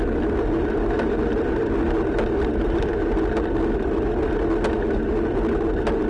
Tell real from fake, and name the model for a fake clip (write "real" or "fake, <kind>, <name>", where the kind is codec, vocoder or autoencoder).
real